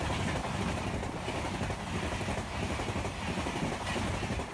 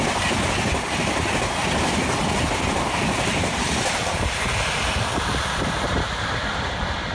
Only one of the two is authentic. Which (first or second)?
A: first